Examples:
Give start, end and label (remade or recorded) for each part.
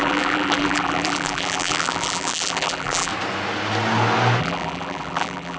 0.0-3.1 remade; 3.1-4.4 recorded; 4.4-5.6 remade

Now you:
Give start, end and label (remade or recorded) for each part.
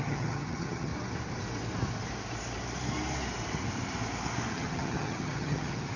0.0-0.9 remade; 0.9-4.5 recorded; 4.5-6.0 remade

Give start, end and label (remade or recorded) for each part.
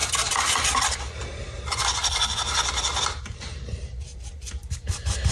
0.0-4.1 recorded; 4.1-4.7 remade; 4.7-5.3 recorded